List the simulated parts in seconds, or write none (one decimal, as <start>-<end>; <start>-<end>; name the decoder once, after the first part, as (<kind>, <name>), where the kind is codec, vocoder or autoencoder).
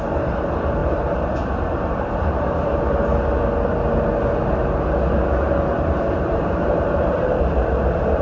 0.8-3.0 (vocoder, BigVGAN v2); 5.7-7.6